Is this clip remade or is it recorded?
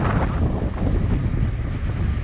recorded